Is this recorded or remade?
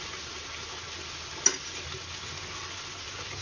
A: recorded